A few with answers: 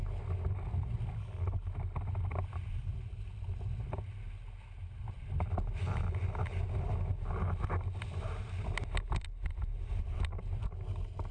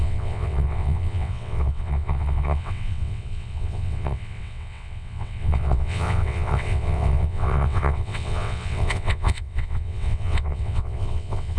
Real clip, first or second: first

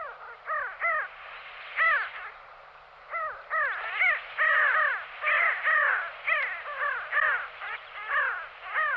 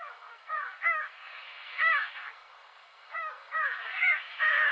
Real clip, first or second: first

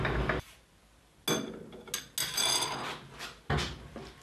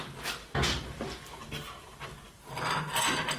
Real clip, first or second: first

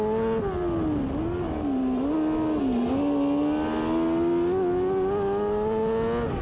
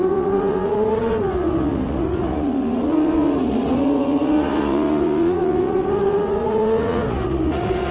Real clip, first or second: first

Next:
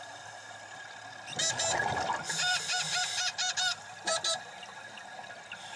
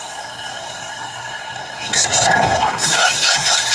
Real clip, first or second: first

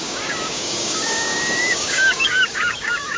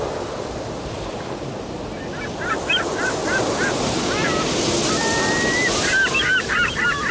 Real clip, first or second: second